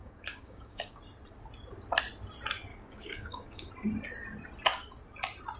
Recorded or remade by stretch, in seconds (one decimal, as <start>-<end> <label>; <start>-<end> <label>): 0.0-1.0 remade; 1.0-2.7 recorded; 2.7-3.7 remade; 3.7-5.6 recorded